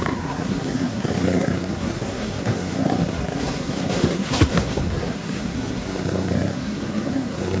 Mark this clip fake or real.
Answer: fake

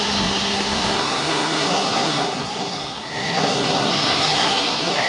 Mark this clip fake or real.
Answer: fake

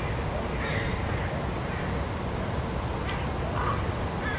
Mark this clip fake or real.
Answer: real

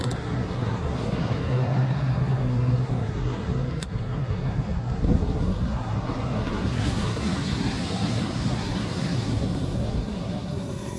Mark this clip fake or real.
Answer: fake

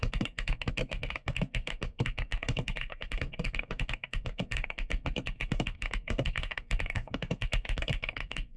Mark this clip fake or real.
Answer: fake